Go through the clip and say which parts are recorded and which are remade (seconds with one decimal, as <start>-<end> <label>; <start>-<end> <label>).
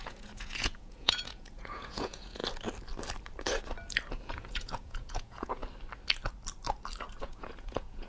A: 0.0-2.4 remade; 2.4-4.1 recorded; 4.1-5.6 remade; 5.6-7.2 recorded; 7.2-8.1 remade